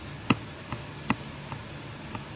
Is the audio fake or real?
real